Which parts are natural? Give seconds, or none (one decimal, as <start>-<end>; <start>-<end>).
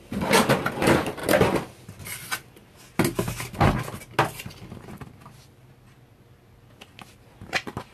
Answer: 0.0-7.9